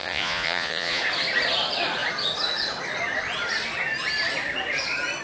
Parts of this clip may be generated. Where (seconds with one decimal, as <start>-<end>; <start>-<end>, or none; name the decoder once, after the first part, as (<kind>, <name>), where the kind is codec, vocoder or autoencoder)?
0.0-1.0 (vocoder, Vocos)